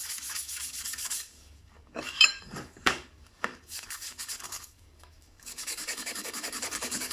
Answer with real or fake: fake